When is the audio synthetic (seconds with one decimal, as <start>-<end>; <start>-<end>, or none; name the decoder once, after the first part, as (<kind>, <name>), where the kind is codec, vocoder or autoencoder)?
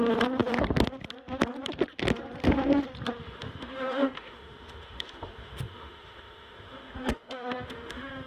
3.2-8.3 (autoencoder, DAC-VAE)